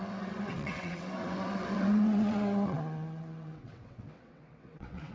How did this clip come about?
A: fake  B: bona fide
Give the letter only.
A